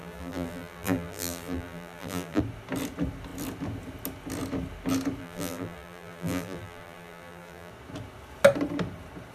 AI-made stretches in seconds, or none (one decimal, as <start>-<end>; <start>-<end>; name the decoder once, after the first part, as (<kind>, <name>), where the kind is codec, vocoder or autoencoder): 0.0-2.4 (vocoder, BigVGAN v2); 5.2-7.7